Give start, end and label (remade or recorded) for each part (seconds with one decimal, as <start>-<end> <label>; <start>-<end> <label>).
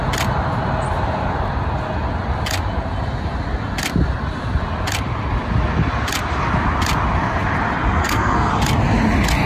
0.0-8.0 recorded; 8.0-8.5 remade; 8.5-9.5 recorded